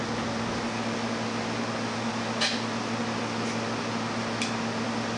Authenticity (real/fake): real